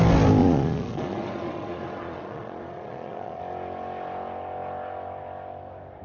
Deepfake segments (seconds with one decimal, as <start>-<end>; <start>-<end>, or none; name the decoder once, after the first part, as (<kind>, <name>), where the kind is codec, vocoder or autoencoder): 0.4-3.4 (vocoder, Vocos)